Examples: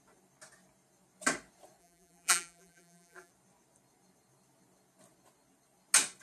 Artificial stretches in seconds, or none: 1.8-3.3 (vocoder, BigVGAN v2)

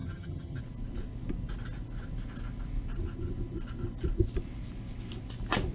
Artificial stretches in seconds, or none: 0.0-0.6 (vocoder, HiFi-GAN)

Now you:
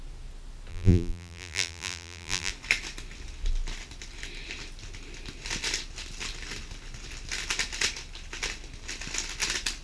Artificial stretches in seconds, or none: 0.7-2.5 (vocoder, BigVGAN v2)

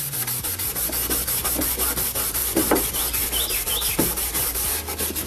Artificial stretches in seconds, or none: none

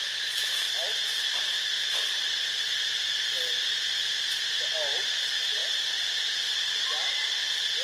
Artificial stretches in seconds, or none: none

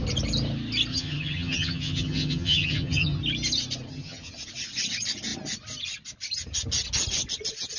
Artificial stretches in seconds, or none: 0.9-3.2 (vocoder, HiFi-GAN); 3.9-4.4